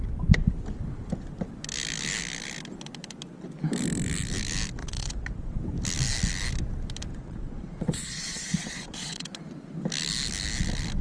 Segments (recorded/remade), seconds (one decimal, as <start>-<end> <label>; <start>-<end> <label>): 0.0-4.8 recorded; 4.8-5.6 remade; 5.6-7.1 recorded; 7.1-9.4 remade; 9.4-11.0 recorded